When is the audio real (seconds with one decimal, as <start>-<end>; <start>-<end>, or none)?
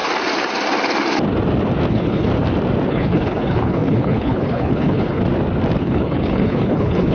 0.0-1.9; 2.3-2.9; 5.2-5.8